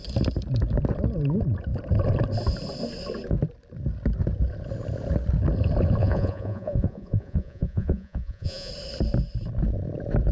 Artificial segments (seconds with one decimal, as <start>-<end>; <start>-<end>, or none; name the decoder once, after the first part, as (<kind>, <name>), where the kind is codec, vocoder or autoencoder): 6.0-8.7 (vocoder, Vocos)